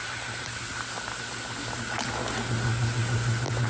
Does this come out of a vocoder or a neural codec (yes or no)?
no